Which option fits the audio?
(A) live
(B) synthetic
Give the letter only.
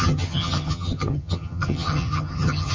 B